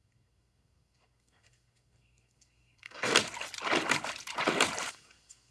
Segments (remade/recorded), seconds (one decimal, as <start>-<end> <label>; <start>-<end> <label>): 0.0-3.1 remade; 3.1-4.9 recorded; 4.9-5.5 remade